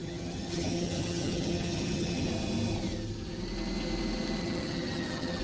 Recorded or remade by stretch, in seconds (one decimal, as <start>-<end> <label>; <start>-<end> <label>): 0.0-2.3 remade; 2.3-4.4 recorded; 4.4-5.4 remade